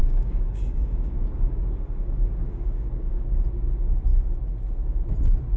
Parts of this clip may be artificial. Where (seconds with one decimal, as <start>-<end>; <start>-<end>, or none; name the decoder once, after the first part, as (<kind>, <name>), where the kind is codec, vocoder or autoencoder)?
0.0-3.4 (codec, DAC)